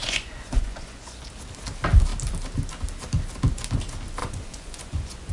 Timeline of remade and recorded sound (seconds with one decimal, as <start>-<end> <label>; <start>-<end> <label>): 0.0-1.3 remade; 1.3-4.2 recorded; 4.2-5.3 remade